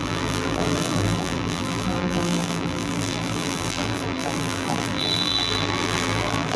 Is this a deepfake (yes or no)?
yes